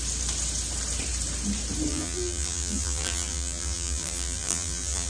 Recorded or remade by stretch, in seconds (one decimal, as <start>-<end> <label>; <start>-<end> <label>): 0.0-1.9 recorded; 1.9-5.1 remade